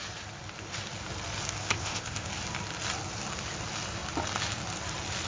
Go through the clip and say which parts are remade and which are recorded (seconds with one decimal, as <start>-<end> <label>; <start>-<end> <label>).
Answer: 0.0-1.6 recorded; 1.6-2.3 remade; 2.3-5.3 recorded